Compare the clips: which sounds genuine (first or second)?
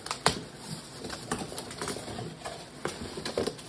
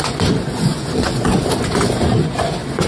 first